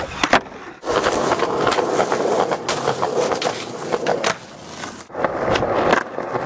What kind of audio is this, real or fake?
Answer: real